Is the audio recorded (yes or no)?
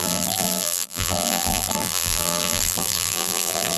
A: no